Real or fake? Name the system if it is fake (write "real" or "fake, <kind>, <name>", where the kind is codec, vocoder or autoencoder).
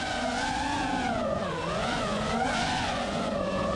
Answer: fake, vocoder, Vocos